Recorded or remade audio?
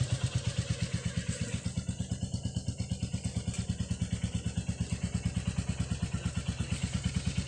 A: recorded